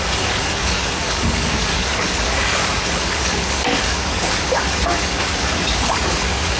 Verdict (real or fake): fake